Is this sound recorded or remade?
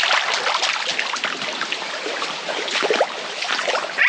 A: recorded